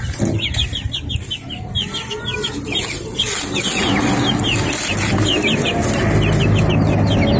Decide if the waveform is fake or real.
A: real